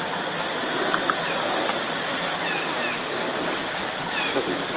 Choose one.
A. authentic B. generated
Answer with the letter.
A